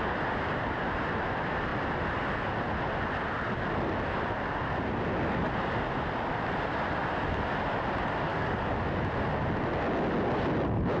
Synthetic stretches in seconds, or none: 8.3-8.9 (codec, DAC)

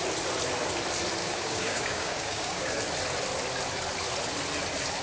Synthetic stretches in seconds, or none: 1.2-2.7 (codec, DAC)

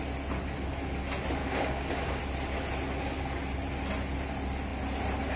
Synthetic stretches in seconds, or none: 1.4-2.2 (codec, DAC)

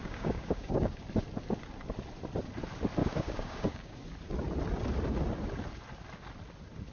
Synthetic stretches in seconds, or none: 0.0-1.0 (codec, DAC); 3.0-4.0

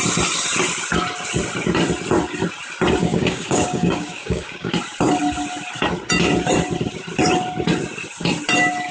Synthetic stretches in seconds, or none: 3.0-4.7 (codec, DAC)

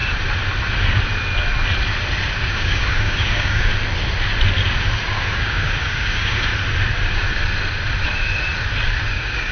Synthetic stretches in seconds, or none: 2.4-3.7 (codec, DAC); 5.2-6.5; 9.1-9.5